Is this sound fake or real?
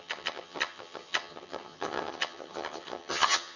fake